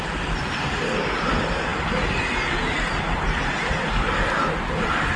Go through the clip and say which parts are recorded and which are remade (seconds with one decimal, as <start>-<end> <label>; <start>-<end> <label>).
0.0-5.2 recorded